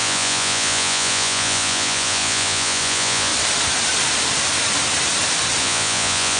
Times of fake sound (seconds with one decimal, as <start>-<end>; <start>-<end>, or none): 0.0-3.3; 5.6-6.4